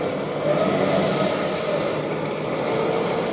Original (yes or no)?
yes